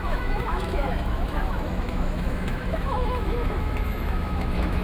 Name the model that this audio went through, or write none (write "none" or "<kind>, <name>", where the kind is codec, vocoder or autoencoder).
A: autoencoder, DAC-VAE